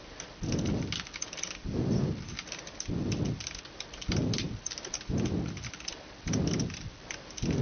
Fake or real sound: real